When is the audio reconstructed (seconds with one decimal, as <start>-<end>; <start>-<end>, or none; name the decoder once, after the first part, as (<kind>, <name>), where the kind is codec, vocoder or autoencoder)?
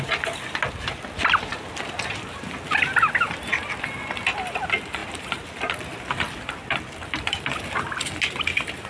none